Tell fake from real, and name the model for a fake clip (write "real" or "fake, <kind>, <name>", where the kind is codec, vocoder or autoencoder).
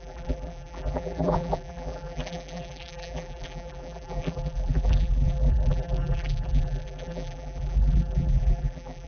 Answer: fake, vocoder, BigVGAN v2